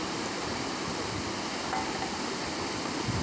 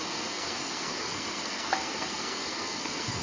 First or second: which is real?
first